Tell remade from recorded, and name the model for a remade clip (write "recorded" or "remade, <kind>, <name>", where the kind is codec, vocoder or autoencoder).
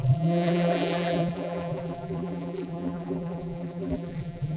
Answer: remade, vocoder, BigVGAN v2